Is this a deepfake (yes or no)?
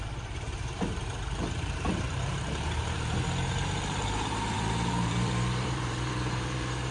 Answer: yes